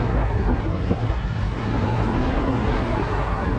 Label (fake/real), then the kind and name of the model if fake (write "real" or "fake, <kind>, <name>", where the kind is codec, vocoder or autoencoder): fake, codec, SNAC